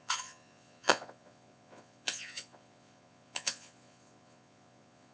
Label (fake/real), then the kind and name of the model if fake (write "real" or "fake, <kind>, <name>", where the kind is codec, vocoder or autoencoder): fake, vocoder, Vocos